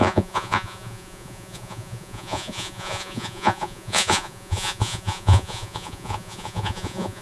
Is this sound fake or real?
fake